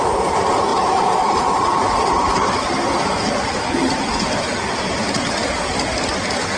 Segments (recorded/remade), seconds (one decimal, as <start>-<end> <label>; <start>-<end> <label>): 0.0-0.7 recorded; 0.7-3.2 remade; 3.2-6.6 recorded